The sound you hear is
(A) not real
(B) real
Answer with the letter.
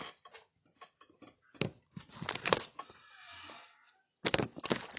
B